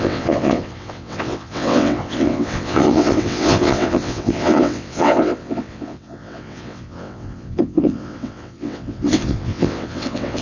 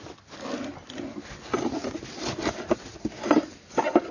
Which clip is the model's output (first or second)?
first